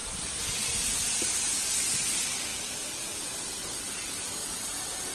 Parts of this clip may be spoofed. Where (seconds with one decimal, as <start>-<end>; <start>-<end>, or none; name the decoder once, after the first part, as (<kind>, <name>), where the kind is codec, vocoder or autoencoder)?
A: 0.0-0.6 (vocoder, BigVGAN v2); 2.5-3.2; 4.4-5.1